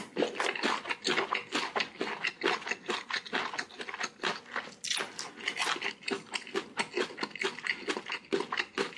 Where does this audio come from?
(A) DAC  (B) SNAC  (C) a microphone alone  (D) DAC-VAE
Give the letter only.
C